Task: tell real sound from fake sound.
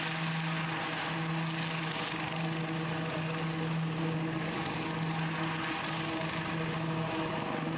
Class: real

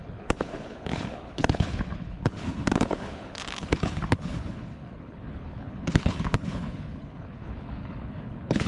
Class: fake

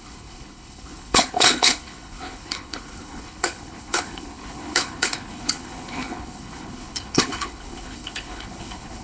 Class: fake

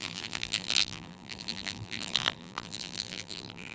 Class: fake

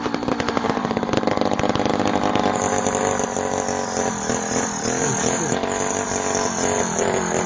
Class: real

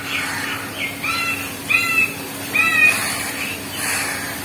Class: real